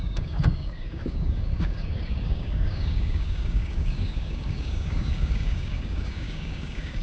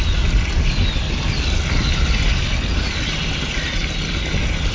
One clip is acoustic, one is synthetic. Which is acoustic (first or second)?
second